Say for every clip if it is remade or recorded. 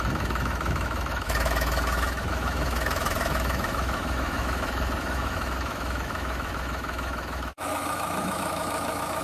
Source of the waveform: remade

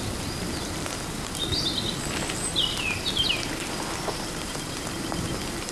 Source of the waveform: remade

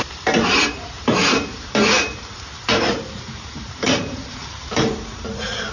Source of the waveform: remade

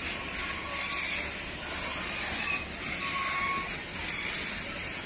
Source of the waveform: recorded